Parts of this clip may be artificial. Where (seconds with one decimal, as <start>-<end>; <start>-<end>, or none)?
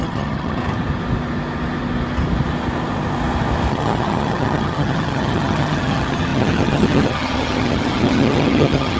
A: 0.0-0.6; 3.7-9.0